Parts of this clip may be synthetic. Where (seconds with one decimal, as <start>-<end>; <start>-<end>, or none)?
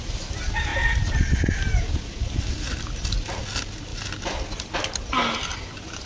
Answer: none